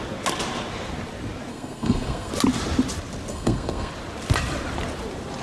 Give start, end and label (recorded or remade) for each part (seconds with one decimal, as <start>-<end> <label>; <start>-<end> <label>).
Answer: 0.0-1.5 recorded; 1.5-2.3 remade; 2.3-3.3 recorded; 3.3-3.9 remade; 3.9-5.4 recorded